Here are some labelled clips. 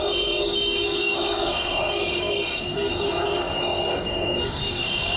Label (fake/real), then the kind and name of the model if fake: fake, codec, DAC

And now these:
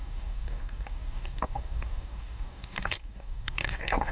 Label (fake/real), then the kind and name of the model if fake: fake, codec, DAC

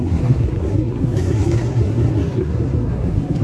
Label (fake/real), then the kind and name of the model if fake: fake, codec, SNAC